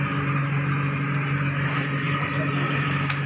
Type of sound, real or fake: real